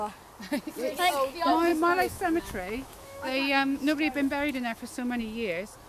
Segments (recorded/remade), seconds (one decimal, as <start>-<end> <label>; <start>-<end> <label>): 0.0-1.7 recorded; 1.7-5.2 remade; 5.2-5.9 recorded